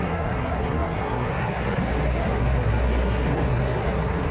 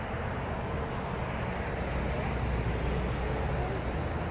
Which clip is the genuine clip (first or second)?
second